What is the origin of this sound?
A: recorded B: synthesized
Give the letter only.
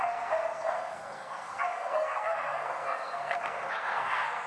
B